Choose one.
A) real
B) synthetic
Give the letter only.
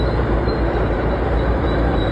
B